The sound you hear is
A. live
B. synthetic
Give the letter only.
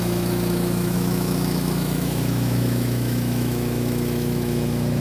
B